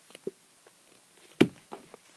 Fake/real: real